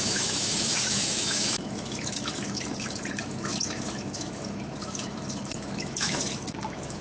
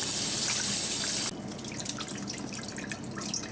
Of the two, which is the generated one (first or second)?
first